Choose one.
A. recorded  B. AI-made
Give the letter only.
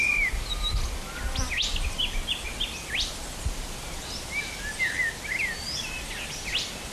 A